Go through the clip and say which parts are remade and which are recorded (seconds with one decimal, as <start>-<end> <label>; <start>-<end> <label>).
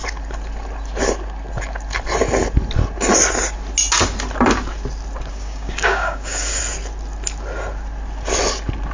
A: 0.0-5.3 recorded; 5.3-6.6 remade; 6.6-8.9 recorded